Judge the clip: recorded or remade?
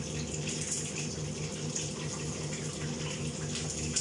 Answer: recorded